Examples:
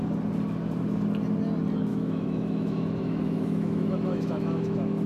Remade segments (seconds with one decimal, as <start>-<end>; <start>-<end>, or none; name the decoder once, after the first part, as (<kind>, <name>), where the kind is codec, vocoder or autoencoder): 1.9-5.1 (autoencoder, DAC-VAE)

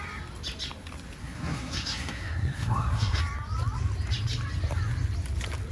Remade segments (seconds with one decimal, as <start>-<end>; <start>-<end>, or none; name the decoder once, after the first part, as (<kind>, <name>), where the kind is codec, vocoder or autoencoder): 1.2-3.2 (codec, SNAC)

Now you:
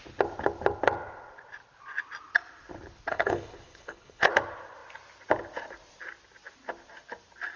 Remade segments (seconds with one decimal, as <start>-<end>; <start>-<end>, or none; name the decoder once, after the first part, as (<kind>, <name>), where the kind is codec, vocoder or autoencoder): 3.1-4.3 (codec, HILCodec)

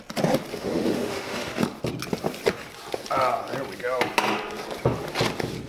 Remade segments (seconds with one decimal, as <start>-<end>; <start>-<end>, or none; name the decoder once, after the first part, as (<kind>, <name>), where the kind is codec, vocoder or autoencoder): 0.5-1.5 (autoencoder, DAC-VAE)